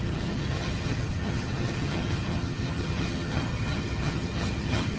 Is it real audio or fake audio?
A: fake